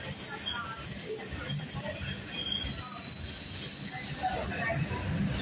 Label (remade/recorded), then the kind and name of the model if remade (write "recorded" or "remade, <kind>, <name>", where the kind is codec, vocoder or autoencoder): recorded